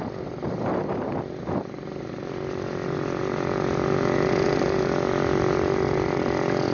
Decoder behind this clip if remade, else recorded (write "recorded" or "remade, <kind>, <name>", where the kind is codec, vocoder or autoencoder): recorded